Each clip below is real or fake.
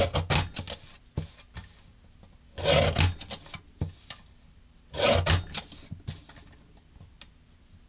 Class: real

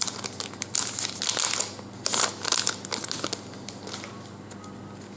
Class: real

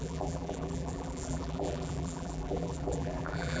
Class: fake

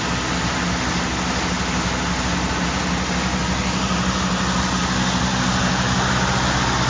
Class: real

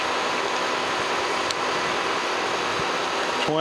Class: real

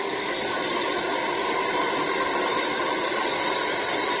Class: fake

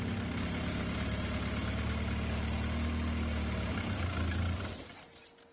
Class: real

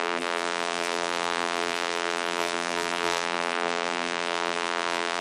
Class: fake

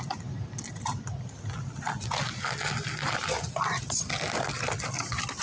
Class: real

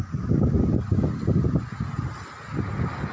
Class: real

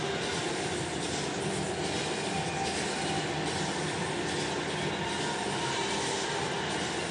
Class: real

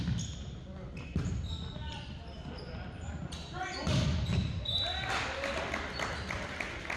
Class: real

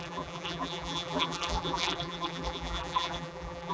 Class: fake